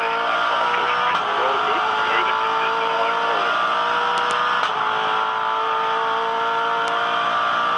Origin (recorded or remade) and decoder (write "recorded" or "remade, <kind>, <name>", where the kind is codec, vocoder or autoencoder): remade, vocoder, BigVGAN v2